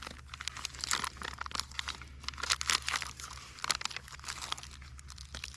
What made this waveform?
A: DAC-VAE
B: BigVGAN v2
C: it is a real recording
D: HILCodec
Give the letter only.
C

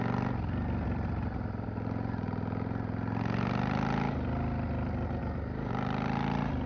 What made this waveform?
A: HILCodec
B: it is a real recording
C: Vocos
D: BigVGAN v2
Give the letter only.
B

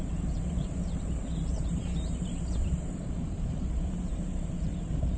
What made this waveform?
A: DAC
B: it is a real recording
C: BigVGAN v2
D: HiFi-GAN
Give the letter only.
C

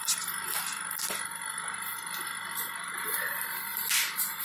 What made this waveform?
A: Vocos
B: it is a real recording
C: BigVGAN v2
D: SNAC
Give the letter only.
B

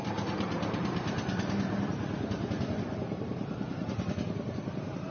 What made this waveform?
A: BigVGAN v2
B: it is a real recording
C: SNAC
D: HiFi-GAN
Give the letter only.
A